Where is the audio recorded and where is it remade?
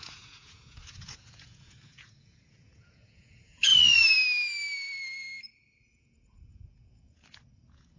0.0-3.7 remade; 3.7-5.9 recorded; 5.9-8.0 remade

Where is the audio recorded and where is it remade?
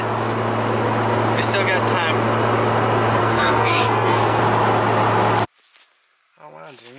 0.0-3.2 recorded; 3.2-4.4 remade; 4.4-7.0 recorded